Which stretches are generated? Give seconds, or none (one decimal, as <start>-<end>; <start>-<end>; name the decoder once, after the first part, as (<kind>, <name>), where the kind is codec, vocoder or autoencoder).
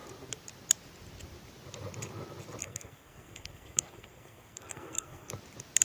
2.6-5.3 (codec, SNAC)